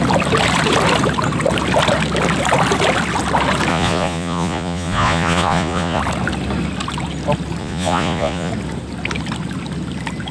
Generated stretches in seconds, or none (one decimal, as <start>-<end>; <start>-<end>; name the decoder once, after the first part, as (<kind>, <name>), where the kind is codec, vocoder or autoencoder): 3.7-6.0 (vocoder, Vocos); 7.6-8.5